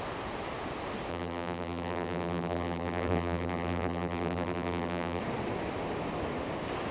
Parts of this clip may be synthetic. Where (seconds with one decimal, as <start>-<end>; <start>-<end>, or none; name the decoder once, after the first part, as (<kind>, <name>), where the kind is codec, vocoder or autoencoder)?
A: 1.1-5.2 (vocoder, BigVGAN v2)